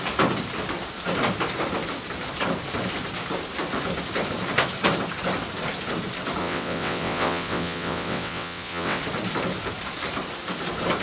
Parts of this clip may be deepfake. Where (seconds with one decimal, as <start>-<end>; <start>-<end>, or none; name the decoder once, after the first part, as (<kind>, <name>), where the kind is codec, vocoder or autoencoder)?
6.4-9.0 (vocoder, WaveNeXt)